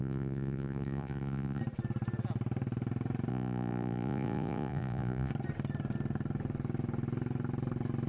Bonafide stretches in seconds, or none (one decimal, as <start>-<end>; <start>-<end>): 1.6-3.3; 5.3-8.1